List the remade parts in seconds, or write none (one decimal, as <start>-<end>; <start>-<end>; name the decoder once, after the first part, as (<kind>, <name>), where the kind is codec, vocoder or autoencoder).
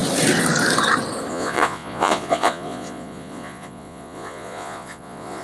1.3-5.4 (vocoder, Vocos)